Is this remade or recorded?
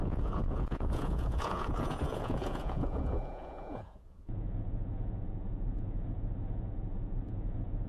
remade